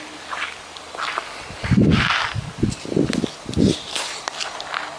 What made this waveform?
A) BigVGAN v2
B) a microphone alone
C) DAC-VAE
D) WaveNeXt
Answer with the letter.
B